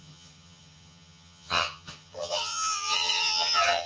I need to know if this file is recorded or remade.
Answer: remade